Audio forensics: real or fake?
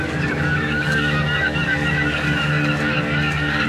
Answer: fake